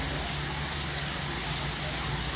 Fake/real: real